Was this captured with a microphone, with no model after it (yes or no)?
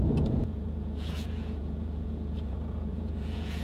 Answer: no